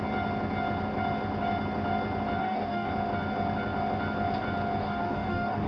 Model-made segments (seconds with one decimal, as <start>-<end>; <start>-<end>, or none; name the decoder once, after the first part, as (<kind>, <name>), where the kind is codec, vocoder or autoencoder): 2.4-2.9 (codec, DAC); 4.8-5.7